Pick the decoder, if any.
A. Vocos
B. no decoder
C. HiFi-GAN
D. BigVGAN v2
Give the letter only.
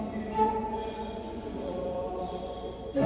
A